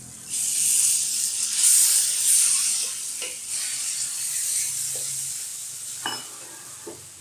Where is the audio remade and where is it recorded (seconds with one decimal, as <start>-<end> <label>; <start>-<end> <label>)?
0.0-7.2 recorded